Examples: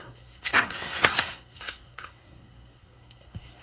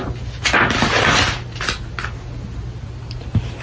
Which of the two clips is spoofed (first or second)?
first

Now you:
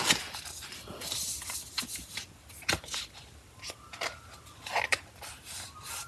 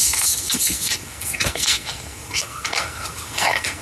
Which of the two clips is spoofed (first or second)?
second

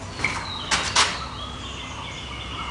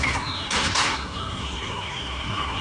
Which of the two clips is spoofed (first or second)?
second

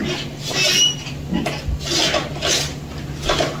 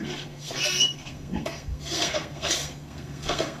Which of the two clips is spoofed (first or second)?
second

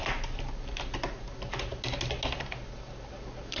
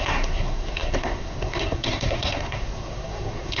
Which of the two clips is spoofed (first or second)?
second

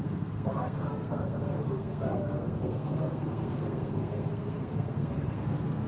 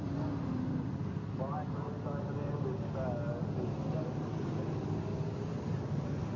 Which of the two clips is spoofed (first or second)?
first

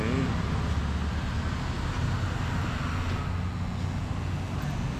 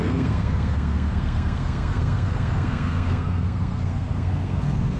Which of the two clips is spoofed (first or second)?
second